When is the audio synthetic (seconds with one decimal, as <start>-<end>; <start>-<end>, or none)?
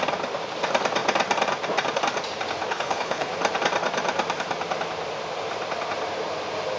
2.7-3.3